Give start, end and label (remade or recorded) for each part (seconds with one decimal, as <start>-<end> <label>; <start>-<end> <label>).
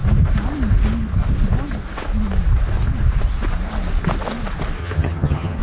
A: 0.0-4.8 recorded; 4.8-5.6 remade